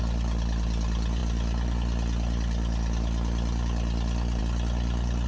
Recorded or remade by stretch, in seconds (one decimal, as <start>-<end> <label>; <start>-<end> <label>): 0.0-5.3 recorded